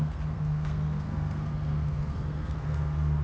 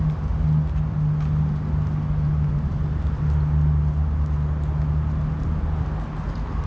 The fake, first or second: first